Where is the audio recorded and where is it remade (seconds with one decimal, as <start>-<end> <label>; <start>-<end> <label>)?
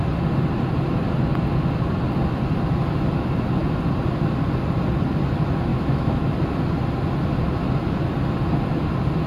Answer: 0.0-5.7 recorded; 5.7-6.3 remade; 6.3-9.3 recorded